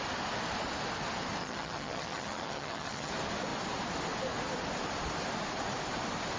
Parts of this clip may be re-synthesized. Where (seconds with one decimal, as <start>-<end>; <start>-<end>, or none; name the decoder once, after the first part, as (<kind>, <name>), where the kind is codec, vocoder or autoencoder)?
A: 1.4-3.1 (vocoder, HiFi-GAN)